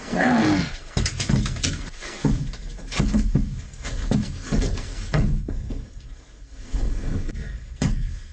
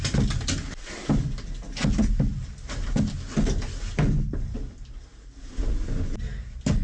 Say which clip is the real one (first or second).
second